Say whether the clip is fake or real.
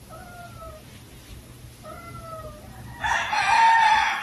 fake